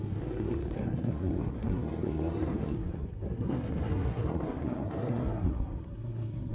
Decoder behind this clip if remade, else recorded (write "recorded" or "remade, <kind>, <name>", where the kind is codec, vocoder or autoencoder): remade, codec, SNAC